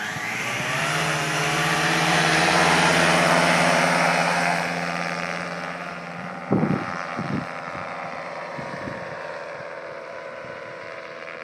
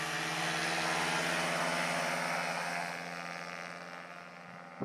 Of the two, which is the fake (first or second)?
first